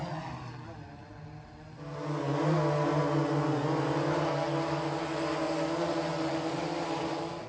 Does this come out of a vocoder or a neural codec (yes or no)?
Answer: no